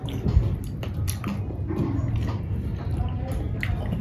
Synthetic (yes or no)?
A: no